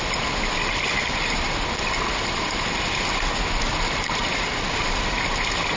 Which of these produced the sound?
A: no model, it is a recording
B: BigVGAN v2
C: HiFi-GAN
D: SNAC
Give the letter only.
A